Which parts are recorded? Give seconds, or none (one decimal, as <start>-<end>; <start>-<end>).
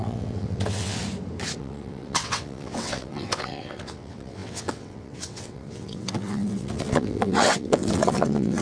1.0-1.6